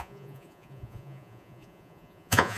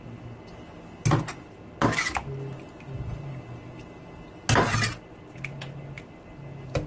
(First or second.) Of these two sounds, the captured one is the second